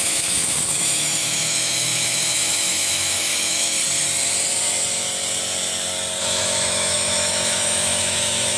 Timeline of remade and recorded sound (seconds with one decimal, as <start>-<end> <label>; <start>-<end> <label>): 0.0-3.8 remade; 3.8-6.2 recorded; 6.2-8.6 remade